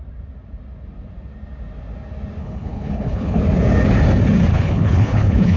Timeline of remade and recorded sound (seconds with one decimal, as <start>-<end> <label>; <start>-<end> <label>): 0.0-2.4 recorded; 2.4-3.4 remade; 3.4-4.5 recorded; 4.5-5.6 remade